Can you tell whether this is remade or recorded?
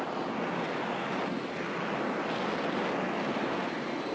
recorded